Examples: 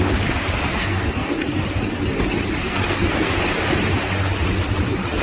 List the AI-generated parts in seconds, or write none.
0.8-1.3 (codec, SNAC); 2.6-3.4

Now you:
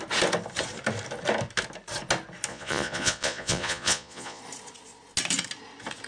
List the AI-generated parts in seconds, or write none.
2.5-4.4 (vocoder, Vocos)

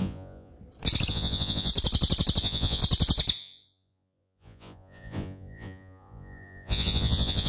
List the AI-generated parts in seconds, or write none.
0.0-0.5 (vocoder, Vocos); 1.1-1.7; 2.4-2.8; 3.4-7.5